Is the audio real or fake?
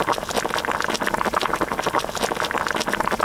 real